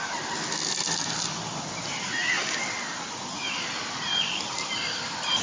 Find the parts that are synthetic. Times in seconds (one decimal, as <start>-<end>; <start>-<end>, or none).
none